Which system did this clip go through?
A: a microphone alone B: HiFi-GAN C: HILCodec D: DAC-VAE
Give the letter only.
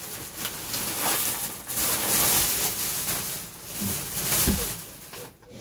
A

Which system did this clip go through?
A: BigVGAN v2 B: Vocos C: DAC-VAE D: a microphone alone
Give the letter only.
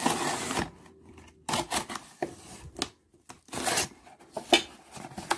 D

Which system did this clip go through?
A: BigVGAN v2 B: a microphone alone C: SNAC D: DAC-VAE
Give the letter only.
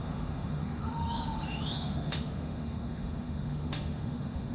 D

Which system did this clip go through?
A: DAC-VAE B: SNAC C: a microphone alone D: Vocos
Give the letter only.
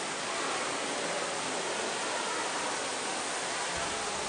C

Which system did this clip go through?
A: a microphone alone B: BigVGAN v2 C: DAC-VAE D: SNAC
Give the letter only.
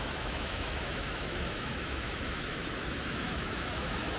C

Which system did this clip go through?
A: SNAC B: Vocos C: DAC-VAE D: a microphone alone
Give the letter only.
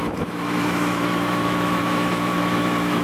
C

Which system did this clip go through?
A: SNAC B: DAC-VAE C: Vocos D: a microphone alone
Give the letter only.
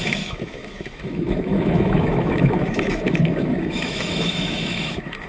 B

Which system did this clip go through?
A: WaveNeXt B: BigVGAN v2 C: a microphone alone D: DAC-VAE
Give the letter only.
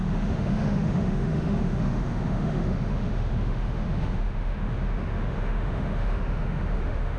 D